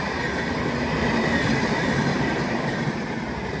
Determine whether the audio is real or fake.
fake